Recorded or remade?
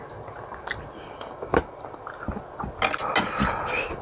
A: recorded